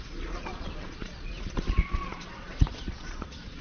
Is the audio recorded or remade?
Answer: remade